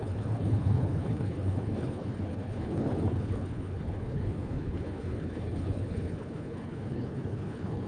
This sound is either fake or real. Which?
fake